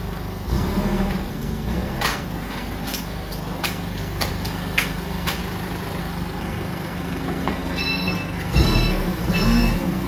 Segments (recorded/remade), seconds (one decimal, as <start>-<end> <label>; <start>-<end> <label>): 0.0-5.4 remade; 5.4-6.0 recorded; 6.0-10.1 remade